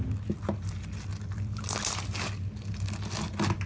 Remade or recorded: recorded